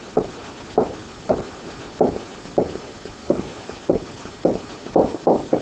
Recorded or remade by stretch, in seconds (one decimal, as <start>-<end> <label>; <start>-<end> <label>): 0.0-3.2 recorded; 3.2-3.8 remade; 3.8-4.8 recorded; 4.8-5.6 remade